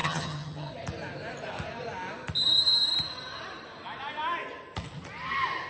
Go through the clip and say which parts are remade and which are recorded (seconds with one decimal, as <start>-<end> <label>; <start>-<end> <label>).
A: 0.0-0.7 remade; 0.7-5.7 recorded